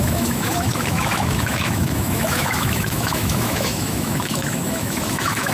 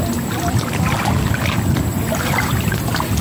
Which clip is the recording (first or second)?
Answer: second